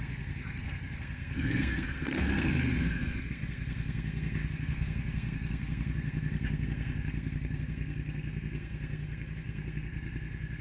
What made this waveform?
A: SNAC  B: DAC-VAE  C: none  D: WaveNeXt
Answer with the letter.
A